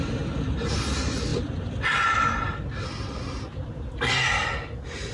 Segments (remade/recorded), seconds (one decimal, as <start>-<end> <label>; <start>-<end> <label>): 0.0-5.1 recorded